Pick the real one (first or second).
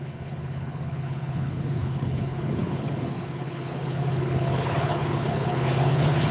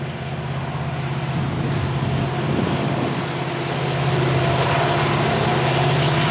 second